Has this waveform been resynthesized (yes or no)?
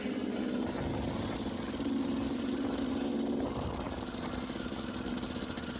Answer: no